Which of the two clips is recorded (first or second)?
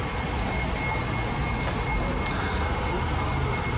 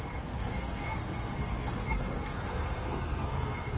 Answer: first